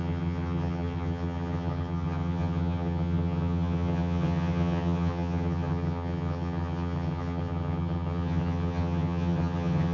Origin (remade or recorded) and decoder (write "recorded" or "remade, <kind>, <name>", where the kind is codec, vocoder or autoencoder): remade, vocoder, HiFi-GAN